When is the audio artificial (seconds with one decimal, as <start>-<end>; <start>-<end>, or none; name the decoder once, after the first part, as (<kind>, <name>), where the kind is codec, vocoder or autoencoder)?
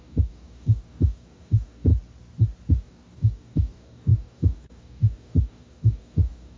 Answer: 0.0-1.9 (codec, DAC); 2.7-6.6